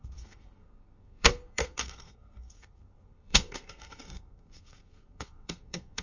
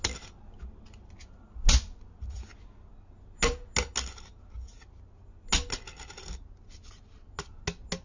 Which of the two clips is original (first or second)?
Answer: second